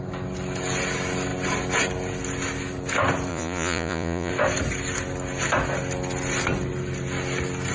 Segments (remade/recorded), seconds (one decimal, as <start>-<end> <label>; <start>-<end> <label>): 0.0-3.3 recorded; 3.3-4.3 remade; 4.3-7.7 recorded